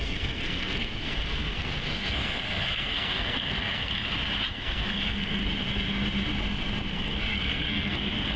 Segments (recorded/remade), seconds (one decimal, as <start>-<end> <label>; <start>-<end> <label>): 0.0-3.9 remade; 3.9-4.5 recorded; 4.5-5.4 remade; 5.4-6.9 recorded; 6.9-8.4 remade